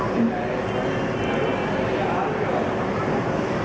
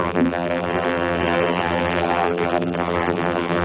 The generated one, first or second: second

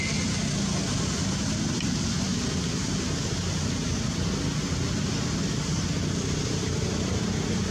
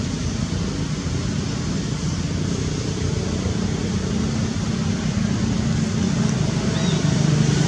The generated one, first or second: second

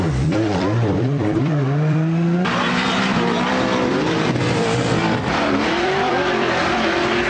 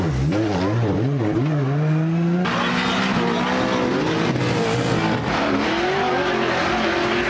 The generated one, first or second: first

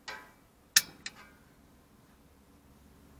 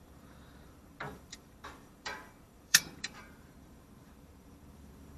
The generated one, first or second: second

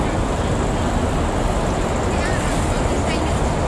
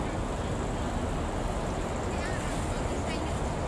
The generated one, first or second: first